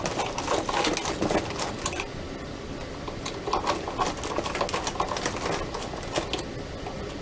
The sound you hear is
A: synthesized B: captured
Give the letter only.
B